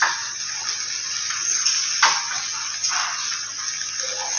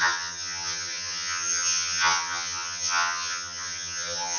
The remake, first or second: second